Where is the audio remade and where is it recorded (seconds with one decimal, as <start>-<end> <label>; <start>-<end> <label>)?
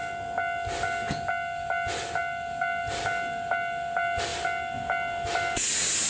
0.0-6.1 recorded